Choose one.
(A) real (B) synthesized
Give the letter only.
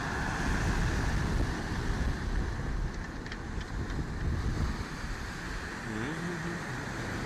A